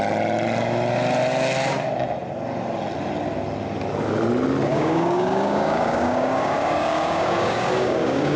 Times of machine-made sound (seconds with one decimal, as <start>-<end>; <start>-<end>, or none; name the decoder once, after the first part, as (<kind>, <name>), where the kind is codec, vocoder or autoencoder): 4.7-8.4 (codec, DAC)